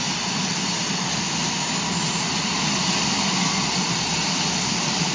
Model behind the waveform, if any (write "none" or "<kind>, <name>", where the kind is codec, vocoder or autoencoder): none